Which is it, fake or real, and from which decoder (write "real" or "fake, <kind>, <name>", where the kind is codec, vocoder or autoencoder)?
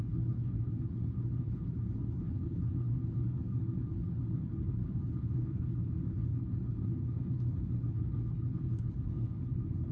fake, codec, HILCodec